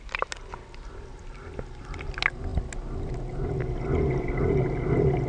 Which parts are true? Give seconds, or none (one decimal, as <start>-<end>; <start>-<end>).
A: 0.0-5.3